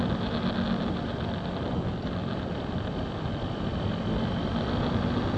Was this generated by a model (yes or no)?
no